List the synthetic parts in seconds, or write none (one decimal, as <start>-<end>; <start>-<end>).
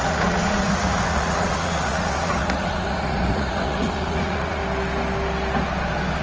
0.0-4.6